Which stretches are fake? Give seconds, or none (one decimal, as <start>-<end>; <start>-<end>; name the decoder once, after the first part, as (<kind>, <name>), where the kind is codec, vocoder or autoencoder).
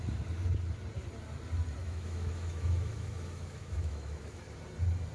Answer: 1.8-4.4 (autoencoder, DAC-VAE)